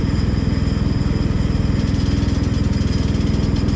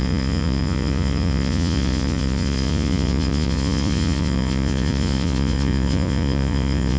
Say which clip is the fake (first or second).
second